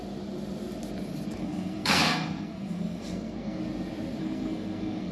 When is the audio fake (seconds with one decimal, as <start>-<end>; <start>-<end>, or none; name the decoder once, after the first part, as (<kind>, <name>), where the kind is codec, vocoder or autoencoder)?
1.4-3.6 (codec, SNAC); 4.2-5.1